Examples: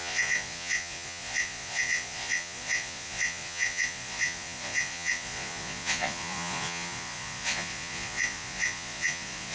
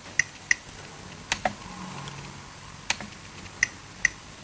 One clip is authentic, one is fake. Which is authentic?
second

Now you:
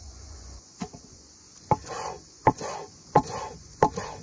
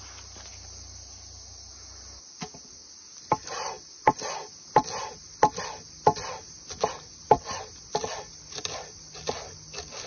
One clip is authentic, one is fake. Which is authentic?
second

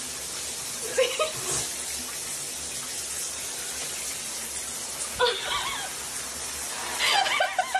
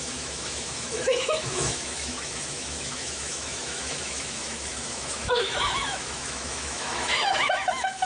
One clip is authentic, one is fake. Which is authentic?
first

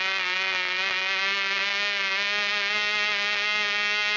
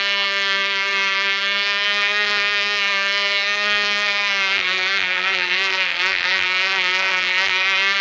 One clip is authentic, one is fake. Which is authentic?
first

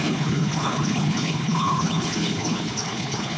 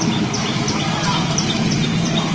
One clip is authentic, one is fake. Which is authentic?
second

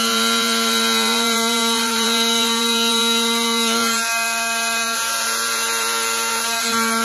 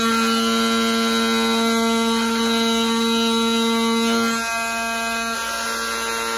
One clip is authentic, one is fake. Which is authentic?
second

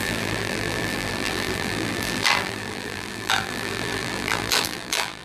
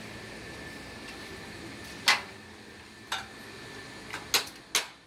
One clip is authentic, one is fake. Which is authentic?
second